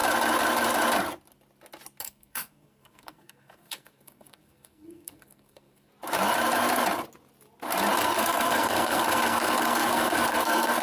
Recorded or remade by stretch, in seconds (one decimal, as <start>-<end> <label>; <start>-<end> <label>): 0.0-2.0 recorded; 2.0-5.9 remade; 5.9-8.0 recorded; 8.0-10.8 remade